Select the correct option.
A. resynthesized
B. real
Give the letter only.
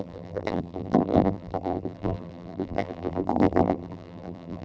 A